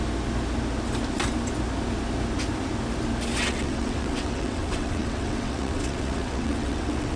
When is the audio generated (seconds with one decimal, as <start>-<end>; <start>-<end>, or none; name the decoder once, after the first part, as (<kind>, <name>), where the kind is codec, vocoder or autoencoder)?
3.4-7.2 (vocoder, WaveNeXt)